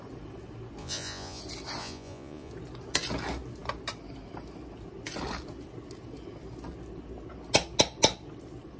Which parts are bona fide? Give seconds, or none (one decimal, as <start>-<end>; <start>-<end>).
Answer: 0.0-0.8; 1.4-1.8; 2.5-8.8